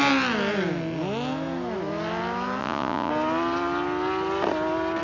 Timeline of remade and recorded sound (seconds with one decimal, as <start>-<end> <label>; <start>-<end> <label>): 0.0-2.6 recorded; 2.6-3.1 remade; 3.1-5.0 recorded